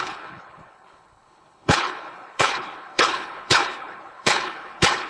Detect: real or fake fake